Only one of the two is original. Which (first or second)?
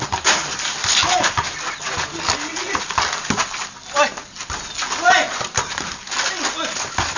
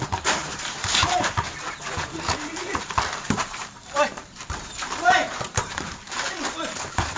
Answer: first